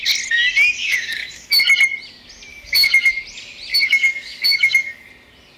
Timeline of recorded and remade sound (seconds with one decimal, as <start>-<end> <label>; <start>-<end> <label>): 0.0-0.8 recorded; 0.8-1.6 remade; 1.6-2.5 recorded; 2.5-3.1 remade; 3.1-3.7 recorded; 3.7-5.1 remade; 5.1-5.6 recorded